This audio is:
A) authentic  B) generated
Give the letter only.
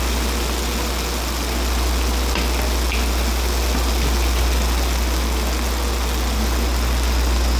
A